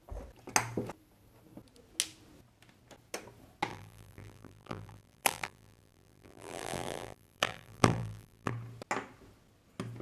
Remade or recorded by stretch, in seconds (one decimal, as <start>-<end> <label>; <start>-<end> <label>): 0.0-3.7 recorded; 3.7-8.5 remade; 8.5-10.0 recorded